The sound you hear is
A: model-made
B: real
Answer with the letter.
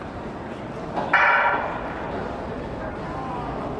B